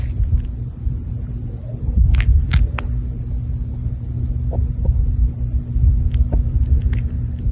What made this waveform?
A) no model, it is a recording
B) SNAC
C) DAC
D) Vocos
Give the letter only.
A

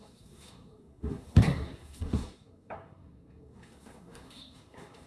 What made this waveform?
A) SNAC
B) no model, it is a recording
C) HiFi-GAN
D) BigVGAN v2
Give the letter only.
A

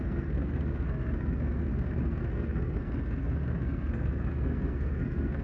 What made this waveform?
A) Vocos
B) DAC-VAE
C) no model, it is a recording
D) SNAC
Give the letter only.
D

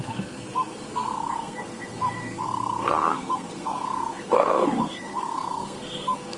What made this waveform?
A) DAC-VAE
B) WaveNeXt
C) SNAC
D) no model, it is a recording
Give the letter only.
C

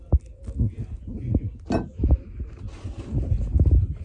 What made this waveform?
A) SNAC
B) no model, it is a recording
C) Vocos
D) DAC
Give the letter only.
B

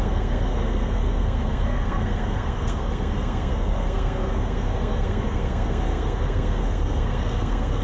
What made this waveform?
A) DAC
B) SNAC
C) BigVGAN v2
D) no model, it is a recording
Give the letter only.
B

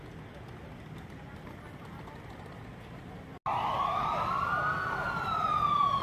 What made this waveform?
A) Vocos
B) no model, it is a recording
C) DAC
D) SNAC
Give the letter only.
B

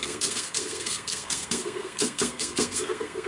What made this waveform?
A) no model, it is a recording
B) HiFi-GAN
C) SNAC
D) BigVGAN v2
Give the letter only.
C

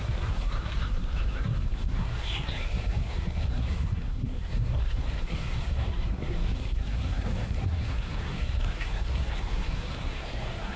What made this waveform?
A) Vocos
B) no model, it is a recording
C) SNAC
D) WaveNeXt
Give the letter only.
C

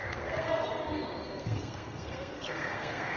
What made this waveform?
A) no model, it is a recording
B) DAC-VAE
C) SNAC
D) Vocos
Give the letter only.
C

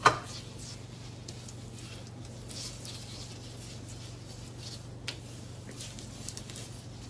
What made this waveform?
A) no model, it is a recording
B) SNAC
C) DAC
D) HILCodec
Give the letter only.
A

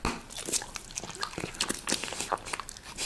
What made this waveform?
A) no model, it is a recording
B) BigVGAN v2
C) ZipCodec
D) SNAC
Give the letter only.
A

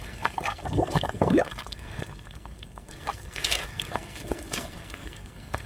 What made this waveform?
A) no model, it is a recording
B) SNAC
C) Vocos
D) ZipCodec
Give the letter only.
B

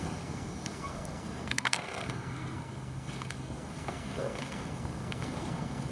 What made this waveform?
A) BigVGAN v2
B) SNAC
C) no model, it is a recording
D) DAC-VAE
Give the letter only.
B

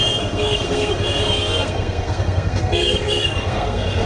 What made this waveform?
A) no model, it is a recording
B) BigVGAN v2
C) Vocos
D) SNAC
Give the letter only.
D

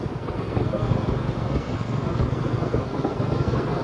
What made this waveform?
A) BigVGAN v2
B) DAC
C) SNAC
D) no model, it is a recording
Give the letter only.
C